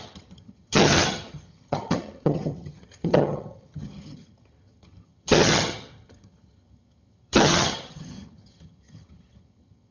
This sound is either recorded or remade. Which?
remade